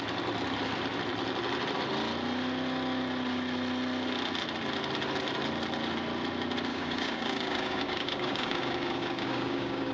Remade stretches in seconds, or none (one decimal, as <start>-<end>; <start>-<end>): 6.7-9.9